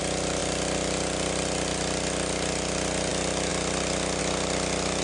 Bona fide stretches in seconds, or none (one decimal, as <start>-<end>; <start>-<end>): 0.0-5.0